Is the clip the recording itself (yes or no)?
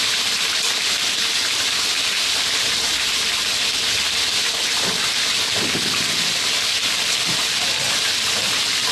yes